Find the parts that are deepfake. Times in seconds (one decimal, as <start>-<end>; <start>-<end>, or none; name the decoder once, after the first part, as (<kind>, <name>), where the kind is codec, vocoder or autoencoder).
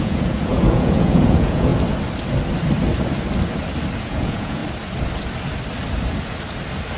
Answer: 0.0-1.7 (vocoder, Vocos); 4.0-4.6